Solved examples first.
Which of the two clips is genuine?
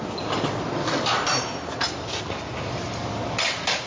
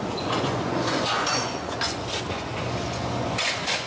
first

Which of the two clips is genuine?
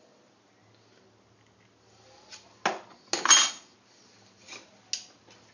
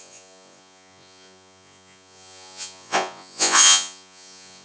first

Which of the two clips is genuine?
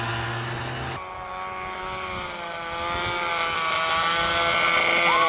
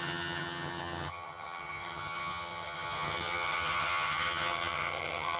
first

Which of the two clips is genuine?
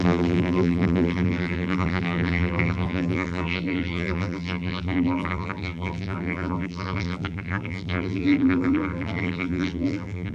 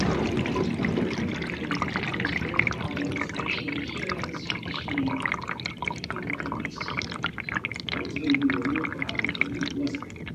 second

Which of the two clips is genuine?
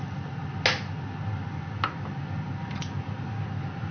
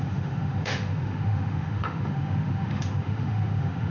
first